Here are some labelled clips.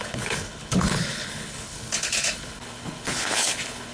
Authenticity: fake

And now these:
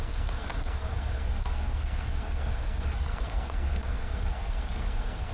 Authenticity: fake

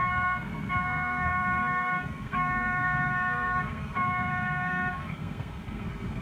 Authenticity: fake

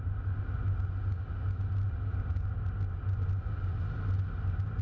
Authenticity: real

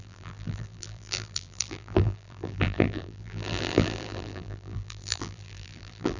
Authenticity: fake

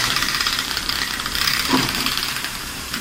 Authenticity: fake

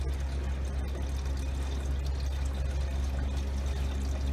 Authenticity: real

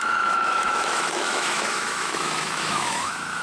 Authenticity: fake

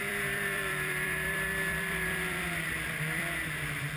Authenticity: fake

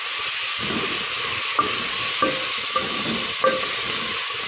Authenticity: real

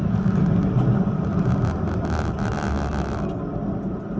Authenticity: real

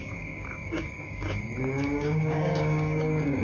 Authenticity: fake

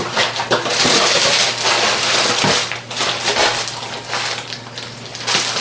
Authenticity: real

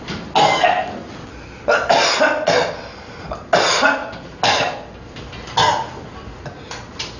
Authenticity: real